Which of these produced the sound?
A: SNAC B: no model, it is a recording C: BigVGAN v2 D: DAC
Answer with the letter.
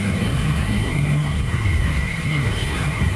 A